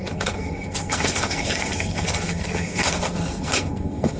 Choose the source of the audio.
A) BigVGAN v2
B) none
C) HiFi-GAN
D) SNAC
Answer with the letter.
D